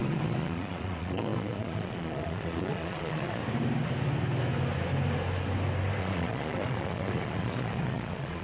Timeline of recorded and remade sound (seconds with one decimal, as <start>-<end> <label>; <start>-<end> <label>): 0.0-3.4 remade; 3.4-6.0 recorded; 6.0-8.4 remade

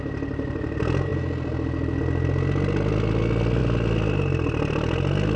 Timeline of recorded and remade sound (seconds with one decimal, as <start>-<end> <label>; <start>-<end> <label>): 0.0-5.4 recorded

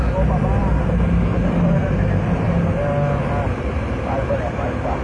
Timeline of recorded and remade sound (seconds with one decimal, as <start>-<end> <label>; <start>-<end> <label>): 0.0-5.0 recorded